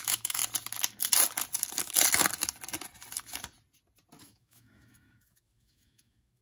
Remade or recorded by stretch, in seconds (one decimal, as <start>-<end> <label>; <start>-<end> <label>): 0.0-0.4 remade; 0.4-4.2 recorded; 4.2-6.4 remade